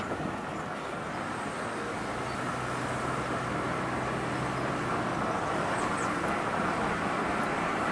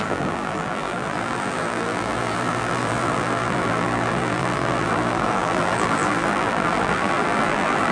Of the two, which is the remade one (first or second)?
second